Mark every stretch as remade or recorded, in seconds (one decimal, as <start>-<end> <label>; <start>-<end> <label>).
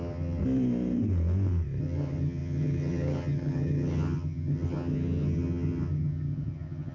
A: 0.0-0.4 remade; 0.4-1.8 recorded; 1.8-6.9 remade